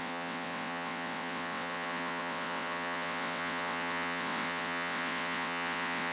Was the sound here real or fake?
fake